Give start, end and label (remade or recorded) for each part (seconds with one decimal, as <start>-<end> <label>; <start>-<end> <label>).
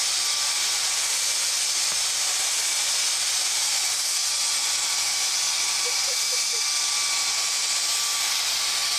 0.0-9.0 recorded